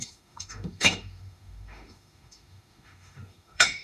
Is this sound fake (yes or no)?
yes